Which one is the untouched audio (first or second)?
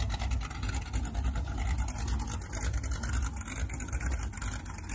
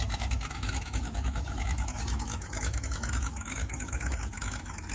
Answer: first